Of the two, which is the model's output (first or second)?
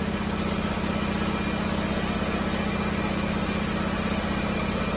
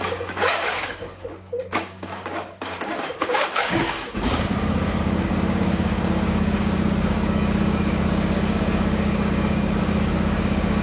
second